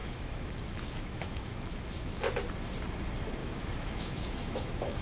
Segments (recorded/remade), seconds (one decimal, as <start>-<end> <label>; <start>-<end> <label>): 0.0-2.2 remade; 2.2-3.4 recorded; 3.4-5.0 remade